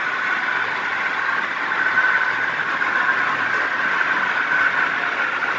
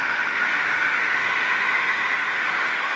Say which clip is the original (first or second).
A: first